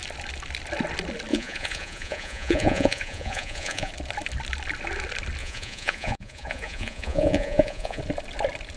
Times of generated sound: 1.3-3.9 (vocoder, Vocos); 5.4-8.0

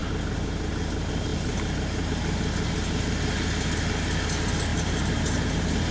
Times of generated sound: 1.3-2.1 (vocoder, BigVGAN v2); 4.7-5.5

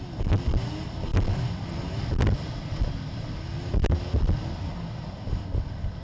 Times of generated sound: none

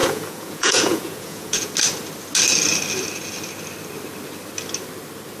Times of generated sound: 0.0-1.7 (vocoder, Vocos)

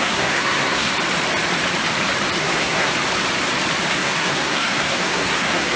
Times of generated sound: 0.0-0.9 (codec, SNAC); 2.4-2.9; 3.9-5.8

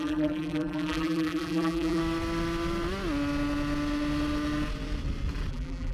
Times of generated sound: 0.0-2.0 (vocoder, BigVGAN v2); 5.5-5.9